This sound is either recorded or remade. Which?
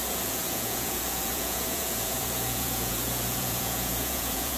remade